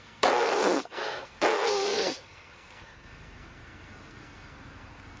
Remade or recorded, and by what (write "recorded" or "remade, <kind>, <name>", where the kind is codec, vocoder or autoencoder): remade, codec, SNAC